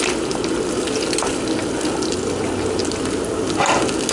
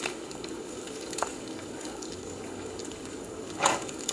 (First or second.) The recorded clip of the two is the first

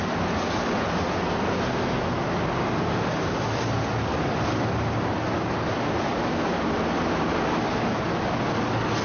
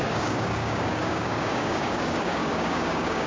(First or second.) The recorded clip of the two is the first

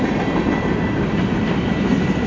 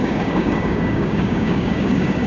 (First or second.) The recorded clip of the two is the first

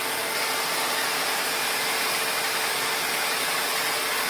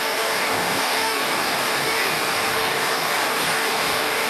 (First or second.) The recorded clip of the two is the first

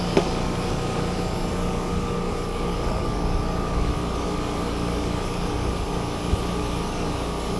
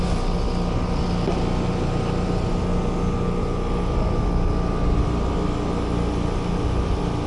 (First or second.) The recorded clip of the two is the second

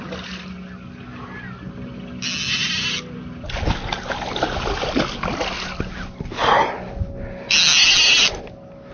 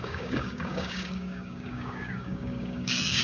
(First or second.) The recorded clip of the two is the first